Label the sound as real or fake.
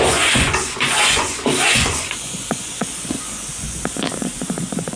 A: fake